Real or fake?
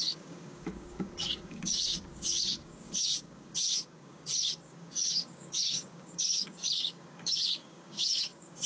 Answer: fake